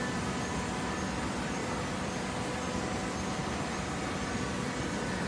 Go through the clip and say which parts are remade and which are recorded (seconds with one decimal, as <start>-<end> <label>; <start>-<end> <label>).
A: 0.0-5.3 recorded